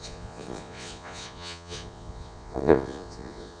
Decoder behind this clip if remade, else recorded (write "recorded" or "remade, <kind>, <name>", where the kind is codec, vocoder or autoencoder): remade, vocoder, Vocos